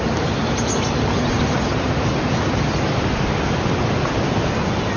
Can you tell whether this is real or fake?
real